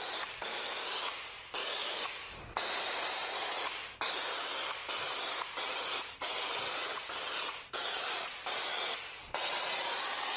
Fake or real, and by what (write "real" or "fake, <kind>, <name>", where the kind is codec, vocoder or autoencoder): fake, vocoder, BigVGAN v2